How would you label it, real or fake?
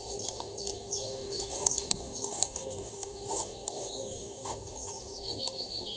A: fake